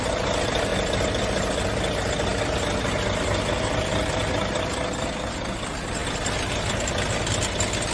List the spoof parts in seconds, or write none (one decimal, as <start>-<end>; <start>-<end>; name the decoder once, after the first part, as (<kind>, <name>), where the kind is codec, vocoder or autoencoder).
none